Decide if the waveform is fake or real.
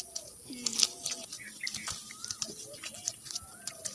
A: real